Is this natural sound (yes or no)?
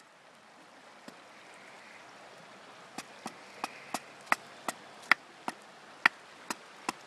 yes